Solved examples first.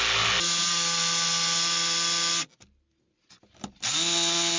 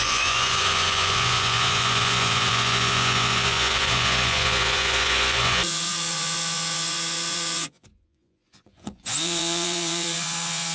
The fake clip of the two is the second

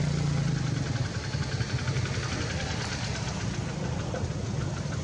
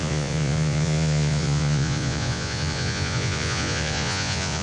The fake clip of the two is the second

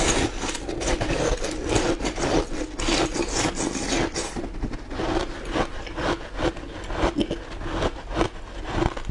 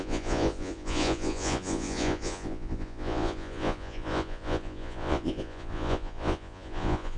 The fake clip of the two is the second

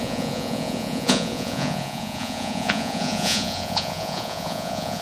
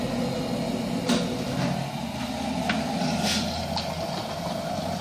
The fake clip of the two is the first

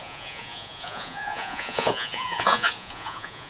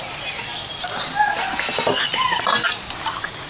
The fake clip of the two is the first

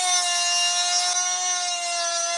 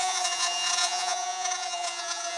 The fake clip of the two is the second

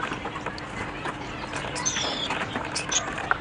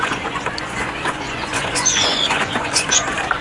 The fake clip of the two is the second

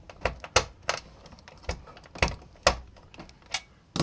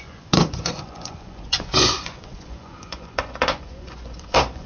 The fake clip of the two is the second